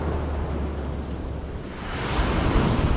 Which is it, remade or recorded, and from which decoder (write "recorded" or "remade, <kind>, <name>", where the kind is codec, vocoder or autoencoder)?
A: recorded